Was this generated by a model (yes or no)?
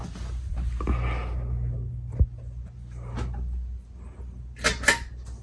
no